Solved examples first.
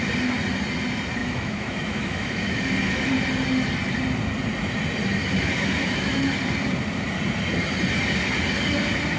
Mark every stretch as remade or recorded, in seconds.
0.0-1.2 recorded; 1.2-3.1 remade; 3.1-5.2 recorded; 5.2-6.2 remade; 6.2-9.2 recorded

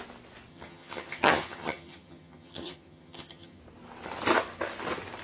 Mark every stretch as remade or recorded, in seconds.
0.0-0.5 recorded; 0.5-3.6 remade; 3.6-5.2 recorded

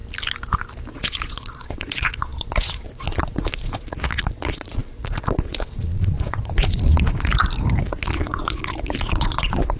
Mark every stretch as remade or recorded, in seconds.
0.0-0.9 recorded; 0.9-7.3 remade; 7.3-8.1 recorded; 8.1-9.8 remade

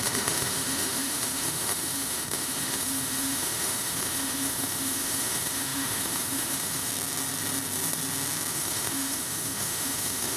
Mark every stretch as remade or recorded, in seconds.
0.0-6.9 remade; 6.9-8.5 recorded; 8.5-10.4 remade

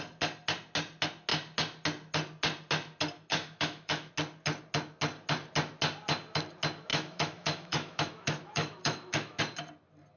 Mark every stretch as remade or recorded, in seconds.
0.0-3.3 recorded; 3.3-4.1 remade; 4.1-6.9 recorded; 6.9-9.4 remade; 9.4-10.2 recorded

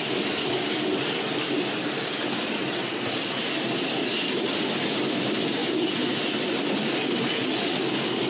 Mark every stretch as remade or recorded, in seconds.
0.0-5.6 recorded; 5.6-6.2 remade; 6.2-8.3 recorded